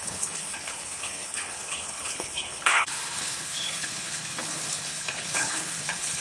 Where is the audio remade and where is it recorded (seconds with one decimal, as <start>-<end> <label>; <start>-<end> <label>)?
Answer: 0.0-6.2 remade